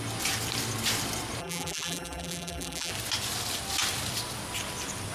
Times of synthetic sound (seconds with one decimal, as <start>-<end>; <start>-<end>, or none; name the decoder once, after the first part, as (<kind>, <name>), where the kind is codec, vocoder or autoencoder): 1.4-2.9 (vocoder, BigVGAN v2)